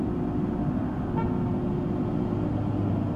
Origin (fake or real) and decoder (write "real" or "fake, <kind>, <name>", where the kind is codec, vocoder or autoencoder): real